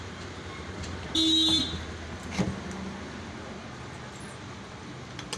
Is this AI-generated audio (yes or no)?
no